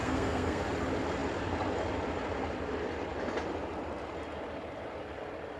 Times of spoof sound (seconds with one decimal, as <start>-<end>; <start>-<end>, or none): 0.0-0.6